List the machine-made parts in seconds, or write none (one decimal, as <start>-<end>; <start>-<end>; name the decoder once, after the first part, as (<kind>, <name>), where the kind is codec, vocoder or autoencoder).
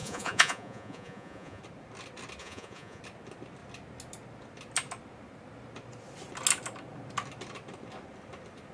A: 0.0-1.6 (vocoder, Vocos); 2.4-3.0